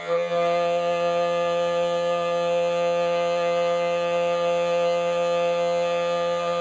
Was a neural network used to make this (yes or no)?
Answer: yes